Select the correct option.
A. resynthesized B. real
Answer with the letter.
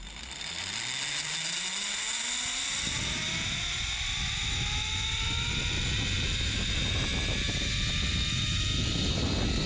B